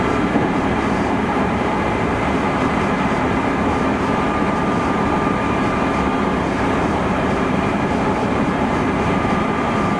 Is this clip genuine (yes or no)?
no